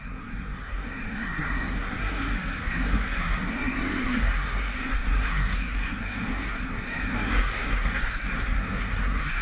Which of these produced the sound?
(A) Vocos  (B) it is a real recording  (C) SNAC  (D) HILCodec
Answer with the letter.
C